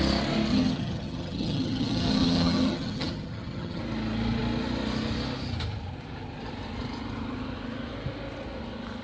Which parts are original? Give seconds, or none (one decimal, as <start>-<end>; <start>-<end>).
0.0-0.5; 3.8-9.0